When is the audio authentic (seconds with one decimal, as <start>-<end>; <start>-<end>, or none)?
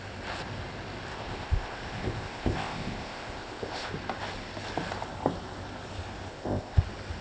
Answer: 0.0-1.1; 3.9-6.3; 6.8-7.2